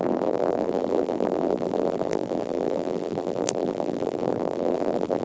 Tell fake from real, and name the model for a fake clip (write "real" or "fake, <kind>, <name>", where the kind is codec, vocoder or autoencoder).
fake, vocoder, BigVGAN v2